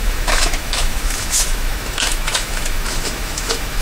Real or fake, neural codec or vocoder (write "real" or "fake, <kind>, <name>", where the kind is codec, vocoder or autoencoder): fake, autoencoder, DAC-VAE